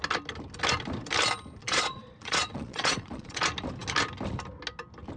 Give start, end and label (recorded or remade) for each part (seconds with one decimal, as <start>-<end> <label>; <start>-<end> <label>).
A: 0.0-1.6 recorded; 1.6-3.4 remade; 3.4-5.2 recorded